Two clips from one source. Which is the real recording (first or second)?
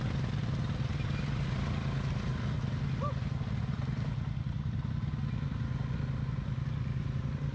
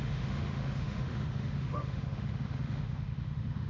first